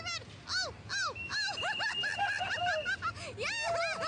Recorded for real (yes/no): yes